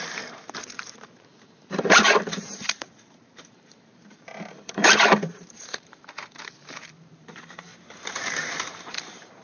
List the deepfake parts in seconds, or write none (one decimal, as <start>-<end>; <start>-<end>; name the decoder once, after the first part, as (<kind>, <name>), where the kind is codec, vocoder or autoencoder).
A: 0.0-7.7 (vocoder, BigVGAN v2); 8.3-9.4